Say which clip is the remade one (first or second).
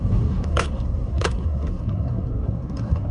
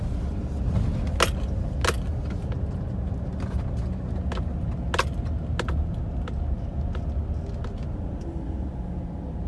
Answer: first